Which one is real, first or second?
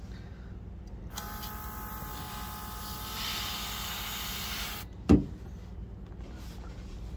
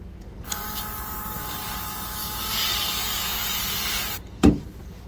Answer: first